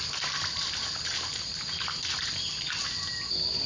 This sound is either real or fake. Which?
real